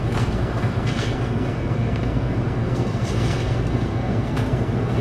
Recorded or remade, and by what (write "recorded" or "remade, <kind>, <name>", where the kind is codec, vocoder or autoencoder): remade, codec, SNAC